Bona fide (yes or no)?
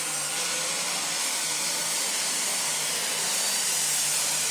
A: yes